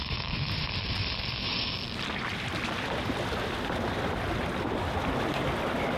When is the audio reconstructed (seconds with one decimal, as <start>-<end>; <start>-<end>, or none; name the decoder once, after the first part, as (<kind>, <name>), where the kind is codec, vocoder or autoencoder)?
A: 0.0-0.5 (autoencoder, DAC-VAE)